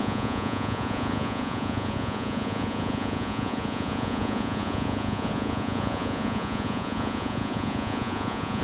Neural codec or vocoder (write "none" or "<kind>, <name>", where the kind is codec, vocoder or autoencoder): vocoder, Vocos